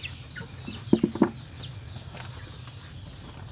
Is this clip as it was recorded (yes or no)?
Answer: yes